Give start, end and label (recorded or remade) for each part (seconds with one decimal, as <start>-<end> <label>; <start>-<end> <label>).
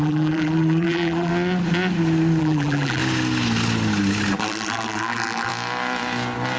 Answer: 0.0-1.3 remade; 1.3-2.4 recorded; 2.4-3.0 remade; 3.0-4.4 recorded; 4.4-5.5 remade; 5.5-6.6 recorded